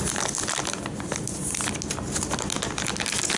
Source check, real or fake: real